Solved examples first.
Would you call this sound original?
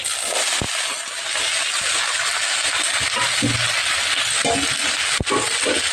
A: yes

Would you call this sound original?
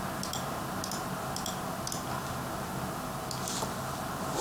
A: yes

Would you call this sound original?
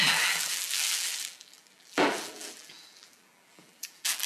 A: no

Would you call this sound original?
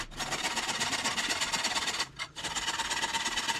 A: yes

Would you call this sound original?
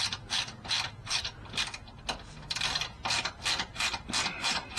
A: yes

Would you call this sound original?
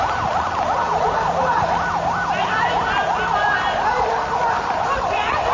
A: no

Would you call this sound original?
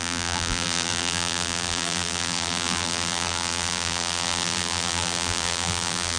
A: no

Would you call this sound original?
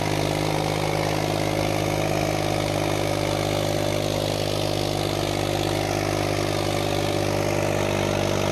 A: yes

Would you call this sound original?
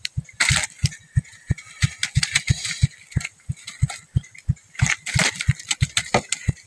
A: yes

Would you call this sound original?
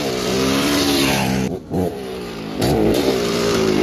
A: no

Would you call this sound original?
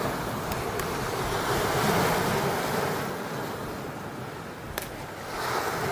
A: yes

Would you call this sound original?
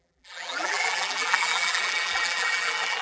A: no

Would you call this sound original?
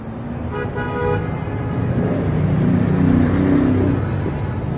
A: yes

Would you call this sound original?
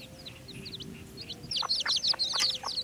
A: yes